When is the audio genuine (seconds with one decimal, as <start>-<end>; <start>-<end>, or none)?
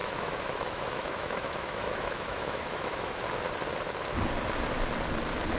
3.2-5.6